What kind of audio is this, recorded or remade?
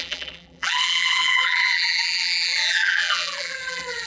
remade